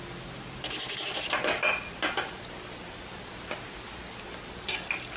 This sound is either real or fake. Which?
real